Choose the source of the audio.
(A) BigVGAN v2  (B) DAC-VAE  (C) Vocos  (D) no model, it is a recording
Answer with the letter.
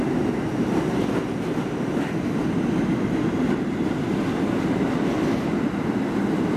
D